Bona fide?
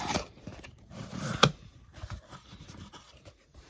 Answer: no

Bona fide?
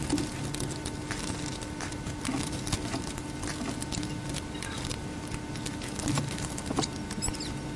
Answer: yes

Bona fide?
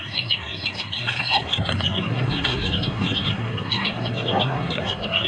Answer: no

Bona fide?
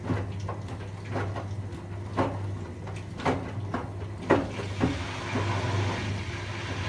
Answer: yes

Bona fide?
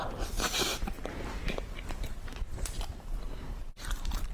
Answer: no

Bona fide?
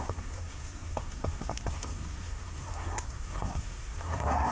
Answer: no